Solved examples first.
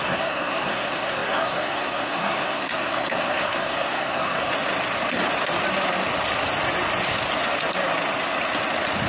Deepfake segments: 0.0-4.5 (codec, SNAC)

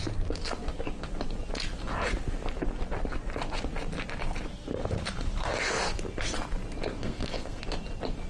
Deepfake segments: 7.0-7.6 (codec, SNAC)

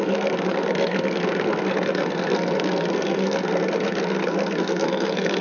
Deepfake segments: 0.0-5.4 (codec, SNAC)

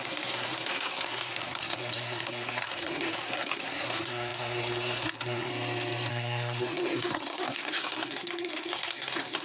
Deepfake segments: 0.0-5.5 (codec, SNAC); 6.1-9.4

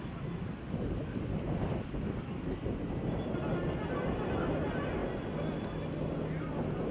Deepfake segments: none

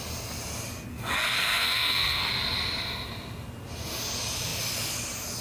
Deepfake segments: 0.9-2.3 (codec, SNAC)

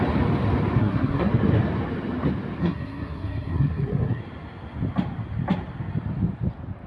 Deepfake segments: 0.8-1.3 (codec, SNAC); 2.6-4.2